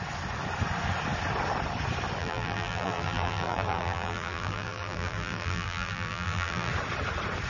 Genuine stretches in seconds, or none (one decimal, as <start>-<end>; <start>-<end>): 0.0-2.2; 6.7-7.5